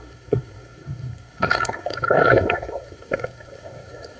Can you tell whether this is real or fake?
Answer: fake